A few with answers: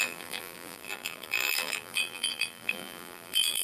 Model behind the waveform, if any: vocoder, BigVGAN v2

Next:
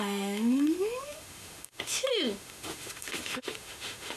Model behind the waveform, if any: autoencoder, DAC-VAE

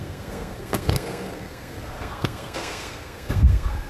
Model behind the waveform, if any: codec, SNAC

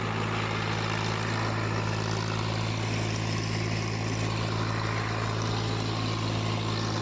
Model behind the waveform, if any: none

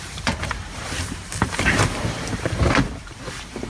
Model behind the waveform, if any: vocoder, BigVGAN v2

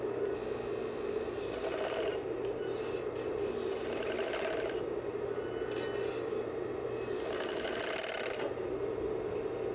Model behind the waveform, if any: none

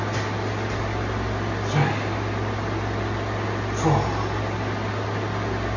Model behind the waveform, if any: none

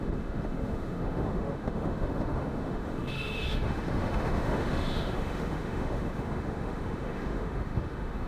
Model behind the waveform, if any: autoencoder, DAC-VAE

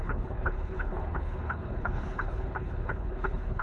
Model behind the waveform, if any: codec, HILCodec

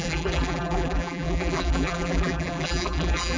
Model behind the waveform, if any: vocoder, BigVGAN v2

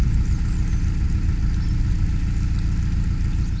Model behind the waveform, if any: none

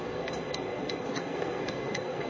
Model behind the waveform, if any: codec, SNAC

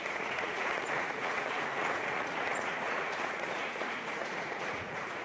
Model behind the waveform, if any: vocoder, Vocos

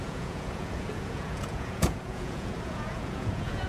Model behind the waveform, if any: vocoder, Vocos